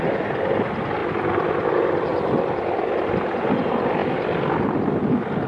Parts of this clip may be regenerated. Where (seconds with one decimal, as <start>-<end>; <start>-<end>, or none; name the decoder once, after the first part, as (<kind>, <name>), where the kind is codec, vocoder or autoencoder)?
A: 2.1-3.1 (vocoder, BigVGAN v2)